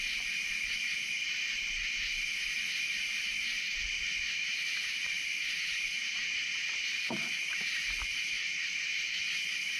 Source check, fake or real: fake